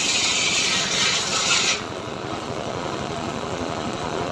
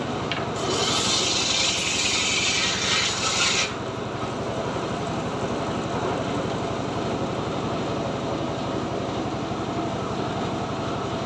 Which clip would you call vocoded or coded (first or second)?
first